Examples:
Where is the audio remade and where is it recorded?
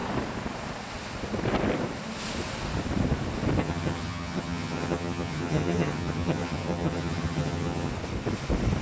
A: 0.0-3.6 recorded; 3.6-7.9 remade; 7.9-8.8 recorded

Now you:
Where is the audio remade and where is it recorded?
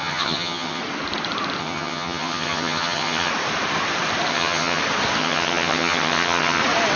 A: 0.0-0.8 remade; 0.8-1.6 recorded; 1.6-3.3 remade; 3.3-4.3 recorded; 4.3-4.8 remade; 4.8-5.2 recorded; 5.2-6.6 remade; 6.6-7.0 recorded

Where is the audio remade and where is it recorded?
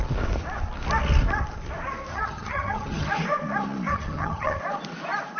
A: 0.0-2.1 recorded; 2.1-3.1 remade; 3.1-3.9 recorded; 3.9-4.6 remade; 4.6-5.4 recorded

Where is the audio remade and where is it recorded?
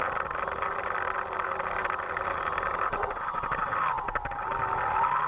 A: 0.0-5.3 recorded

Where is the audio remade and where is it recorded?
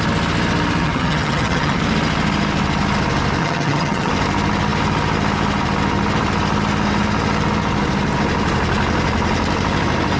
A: 0.0-0.8 recorded; 0.8-1.8 remade; 1.8-3.4 recorded; 3.4-4.1 remade; 4.1-10.2 recorded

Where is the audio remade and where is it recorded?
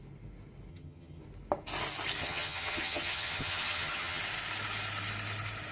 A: 0.0-0.7 recorded; 0.7-1.2 remade; 1.2-2.2 recorded; 2.2-4.2 remade; 4.2-5.7 recorded